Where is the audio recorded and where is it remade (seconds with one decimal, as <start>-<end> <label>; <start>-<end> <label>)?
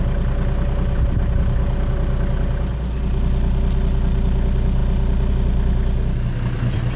0.0-7.0 recorded